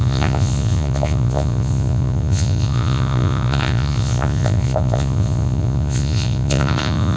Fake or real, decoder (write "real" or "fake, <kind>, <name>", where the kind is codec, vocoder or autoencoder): fake, vocoder, Vocos